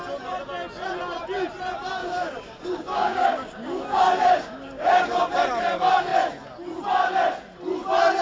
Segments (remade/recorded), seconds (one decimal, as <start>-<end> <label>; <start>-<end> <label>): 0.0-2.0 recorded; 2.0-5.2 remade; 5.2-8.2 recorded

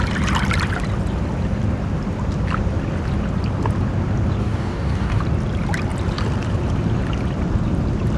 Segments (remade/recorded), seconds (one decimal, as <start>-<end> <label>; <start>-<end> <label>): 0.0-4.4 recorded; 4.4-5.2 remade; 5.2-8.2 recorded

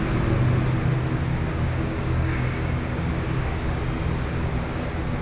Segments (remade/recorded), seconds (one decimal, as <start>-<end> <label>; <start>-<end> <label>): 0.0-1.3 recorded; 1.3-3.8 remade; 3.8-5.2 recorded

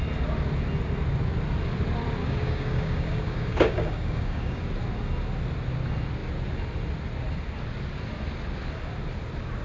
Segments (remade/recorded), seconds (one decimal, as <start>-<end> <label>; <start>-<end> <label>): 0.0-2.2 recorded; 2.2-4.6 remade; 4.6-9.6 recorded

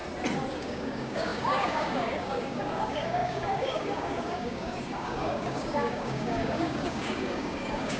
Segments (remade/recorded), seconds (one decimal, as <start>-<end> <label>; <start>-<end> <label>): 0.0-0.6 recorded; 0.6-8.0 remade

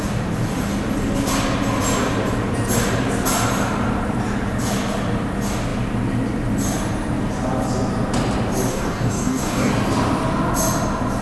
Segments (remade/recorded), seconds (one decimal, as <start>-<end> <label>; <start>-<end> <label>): 0.0-8.7 recorded; 8.7-9.7 remade; 9.7-11.2 recorded